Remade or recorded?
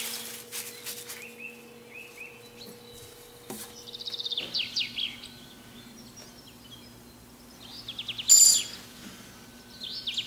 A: recorded